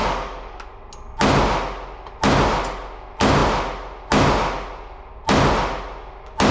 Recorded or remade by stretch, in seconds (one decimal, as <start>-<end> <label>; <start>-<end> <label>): 0.0-0.7 remade; 0.7-6.5 recorded